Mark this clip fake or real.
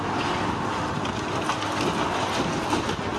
real